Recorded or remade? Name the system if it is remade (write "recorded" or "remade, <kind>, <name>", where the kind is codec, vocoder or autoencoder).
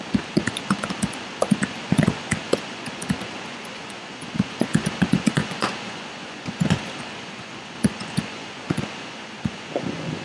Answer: remade, vocoder, Vocos